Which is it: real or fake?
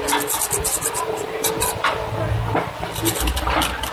real